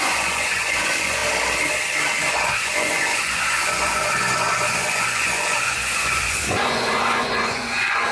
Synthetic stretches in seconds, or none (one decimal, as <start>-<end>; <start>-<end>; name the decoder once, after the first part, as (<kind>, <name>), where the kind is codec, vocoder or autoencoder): 0.0-1.2 (vocoder, Vocos); 2.2-8.1